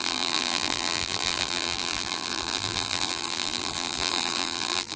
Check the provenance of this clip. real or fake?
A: fake